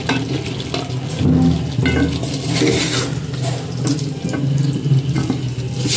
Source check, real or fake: real